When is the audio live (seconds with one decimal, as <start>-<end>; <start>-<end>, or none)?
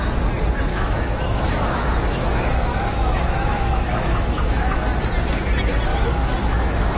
0.0-0.7; 4.9-5.9